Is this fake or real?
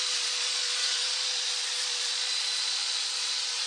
fake